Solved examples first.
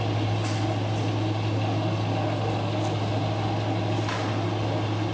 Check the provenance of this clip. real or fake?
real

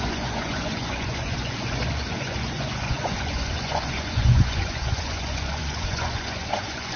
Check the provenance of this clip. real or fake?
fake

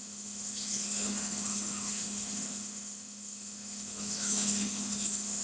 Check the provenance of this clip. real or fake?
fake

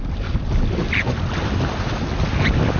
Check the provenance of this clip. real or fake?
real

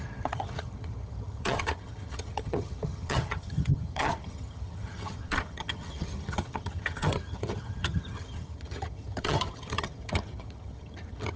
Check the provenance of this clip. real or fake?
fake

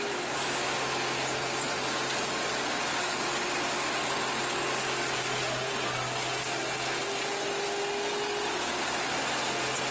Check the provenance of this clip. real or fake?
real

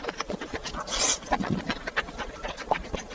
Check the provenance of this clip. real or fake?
fake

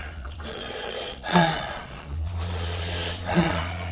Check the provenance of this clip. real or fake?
fake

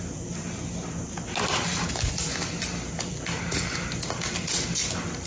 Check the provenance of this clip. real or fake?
real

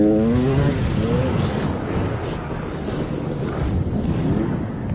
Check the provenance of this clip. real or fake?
fake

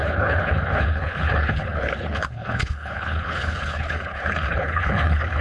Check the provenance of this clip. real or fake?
fake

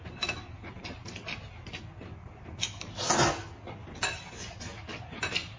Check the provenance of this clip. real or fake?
real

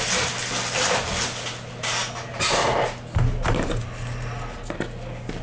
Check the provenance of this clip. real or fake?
real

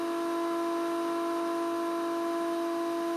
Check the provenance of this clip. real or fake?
real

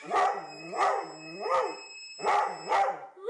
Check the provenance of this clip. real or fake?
real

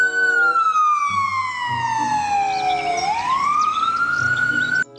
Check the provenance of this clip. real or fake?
real